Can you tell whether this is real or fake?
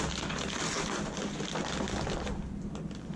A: real